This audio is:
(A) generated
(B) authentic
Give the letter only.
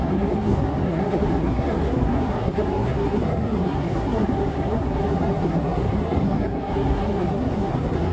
A